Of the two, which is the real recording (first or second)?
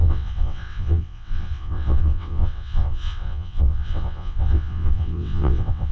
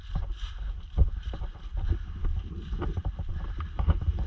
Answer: second